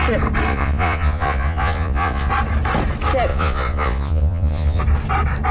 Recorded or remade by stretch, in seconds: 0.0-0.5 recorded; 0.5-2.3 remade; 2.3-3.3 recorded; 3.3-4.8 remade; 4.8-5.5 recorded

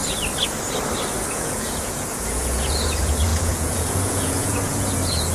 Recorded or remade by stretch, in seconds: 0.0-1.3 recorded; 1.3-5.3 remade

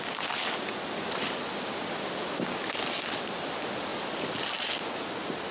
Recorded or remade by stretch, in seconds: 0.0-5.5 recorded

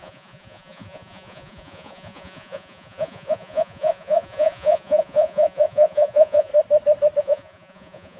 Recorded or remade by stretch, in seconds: 0.0-6.5 remade; 6.5-7.2 recorded; 7.2-8.2 remade

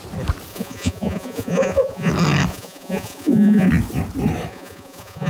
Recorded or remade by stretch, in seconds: 0.0-0.5 recorded; 0.5-2.1 remade; 2.1-2.5 recorded; 2.5-3.7 remade; 3.7-4.5 recorded; 4.5-5.3 remade

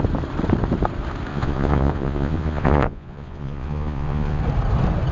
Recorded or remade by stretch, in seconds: 0.0-1.3 recorded; 1.3-4.4 remade; 4.4-5.1 recorded

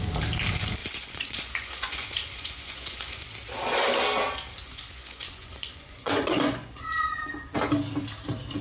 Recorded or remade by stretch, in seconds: 0.0-0.8 recorded; 0.8-3.3 remade; 3.3-4.6 recorded; 4.6-7.2 remade; 7.2-8.6 recorded

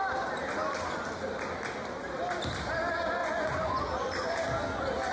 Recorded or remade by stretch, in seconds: 0.0-3.2 recorded; 3.2-3.8 remade; 3.8-5.1 recorded